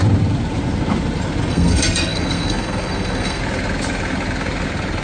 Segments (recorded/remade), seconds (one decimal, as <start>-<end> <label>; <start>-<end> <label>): 0.0-1.5 recorded; 1.5-3.4 remade; 3.4-5.0 recorded